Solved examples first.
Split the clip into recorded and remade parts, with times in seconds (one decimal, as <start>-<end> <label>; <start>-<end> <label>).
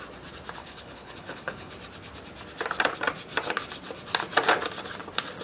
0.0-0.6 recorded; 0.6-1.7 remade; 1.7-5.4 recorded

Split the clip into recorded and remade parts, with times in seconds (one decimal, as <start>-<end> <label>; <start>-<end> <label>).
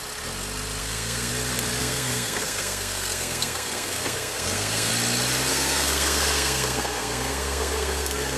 0.0-0.8 recorded; 0.8-1.3 remade; 1.3-1.8 recorded; 1.8-4.9 remade; 4.9-5.5 recorded; 5.5-8.4 remade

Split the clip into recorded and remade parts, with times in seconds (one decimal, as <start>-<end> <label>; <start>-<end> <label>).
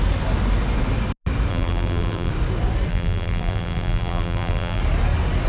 0.0-1.5 recorded; 1.5-2.3 remade; 2.3-2.9 recorded; 2.9-4.8 remade; 4.8-5.5 recorded